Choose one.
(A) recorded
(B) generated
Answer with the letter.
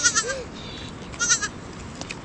A